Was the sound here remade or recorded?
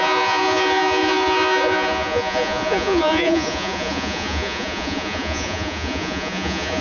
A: remade